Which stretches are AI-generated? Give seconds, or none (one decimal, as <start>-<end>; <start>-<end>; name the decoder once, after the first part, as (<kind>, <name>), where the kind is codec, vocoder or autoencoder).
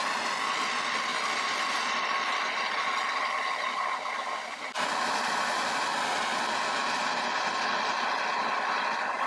none